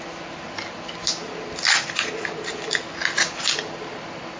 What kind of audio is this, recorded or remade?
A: recorded